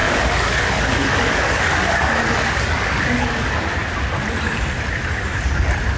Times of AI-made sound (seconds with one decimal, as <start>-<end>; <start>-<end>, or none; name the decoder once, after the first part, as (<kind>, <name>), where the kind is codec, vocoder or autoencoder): 0.0-3.4 (codec, DAC)